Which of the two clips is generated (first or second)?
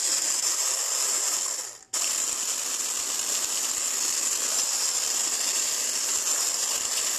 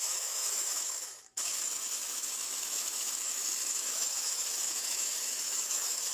second